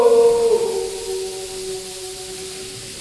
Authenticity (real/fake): real